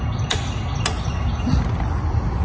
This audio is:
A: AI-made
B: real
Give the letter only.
B